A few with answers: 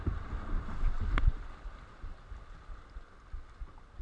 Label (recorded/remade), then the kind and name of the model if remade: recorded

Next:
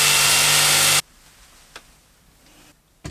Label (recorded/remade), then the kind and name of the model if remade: recorded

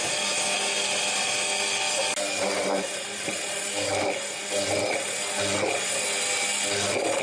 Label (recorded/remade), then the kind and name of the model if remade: recorded